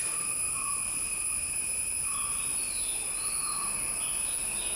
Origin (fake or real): real